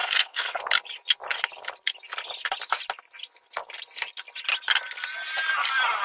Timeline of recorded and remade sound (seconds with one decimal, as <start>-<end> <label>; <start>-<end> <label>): 0.0-0.6 remade; 0.6-6.0 recorded